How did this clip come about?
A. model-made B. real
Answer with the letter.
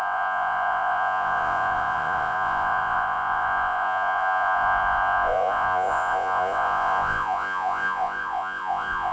A